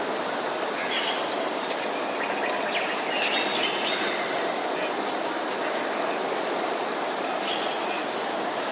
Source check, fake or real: real